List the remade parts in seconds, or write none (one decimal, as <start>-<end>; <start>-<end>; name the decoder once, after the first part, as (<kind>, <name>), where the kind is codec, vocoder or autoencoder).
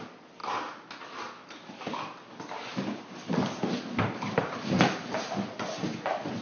none